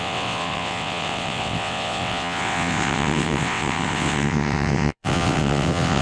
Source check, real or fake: fake